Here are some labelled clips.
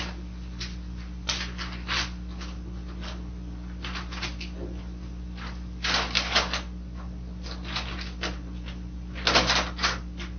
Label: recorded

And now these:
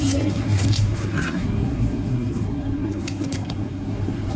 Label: remade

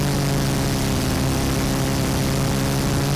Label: recorded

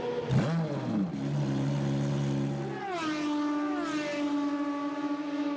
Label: recorded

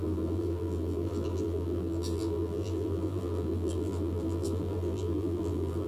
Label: remade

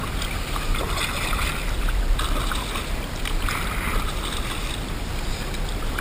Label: recorded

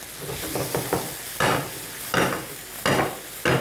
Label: recorded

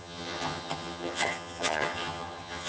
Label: remade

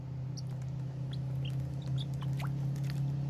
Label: recorded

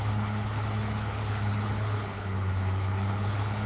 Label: remade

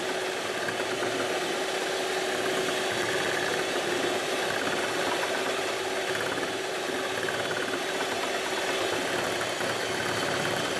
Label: recorded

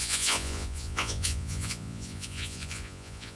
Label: remade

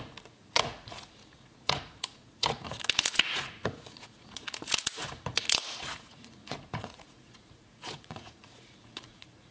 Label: remade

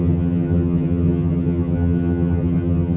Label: remade